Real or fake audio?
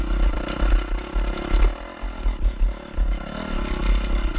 real